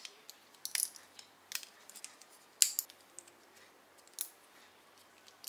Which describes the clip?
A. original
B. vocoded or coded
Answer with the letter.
A